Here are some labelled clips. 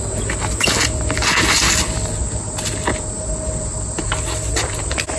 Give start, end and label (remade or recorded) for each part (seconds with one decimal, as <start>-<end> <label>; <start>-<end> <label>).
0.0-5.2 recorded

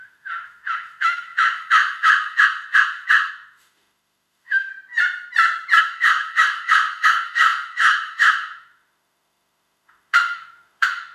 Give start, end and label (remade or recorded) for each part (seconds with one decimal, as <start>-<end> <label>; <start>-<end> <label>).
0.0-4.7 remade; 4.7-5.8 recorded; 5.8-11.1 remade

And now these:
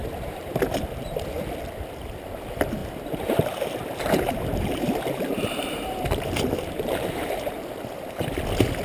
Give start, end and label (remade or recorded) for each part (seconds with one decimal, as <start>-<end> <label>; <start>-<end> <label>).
0.0-0.7 remade; 0.7-2.8 recorded; 2.8-7.6 remade; 7.6-8.8 recorded

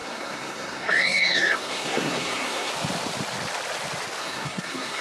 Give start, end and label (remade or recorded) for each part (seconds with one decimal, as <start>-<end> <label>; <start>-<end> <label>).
0.0-2.7 remade; 2.7-4.2 recorded; 4.2-5.0 remade